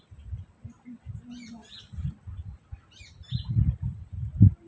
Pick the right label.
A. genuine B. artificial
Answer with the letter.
A